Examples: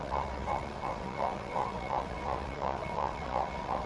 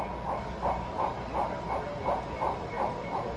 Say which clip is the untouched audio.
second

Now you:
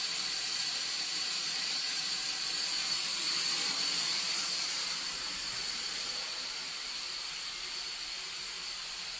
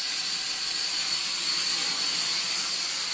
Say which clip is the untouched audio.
second